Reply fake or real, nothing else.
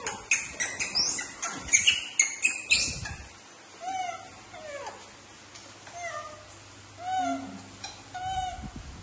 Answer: real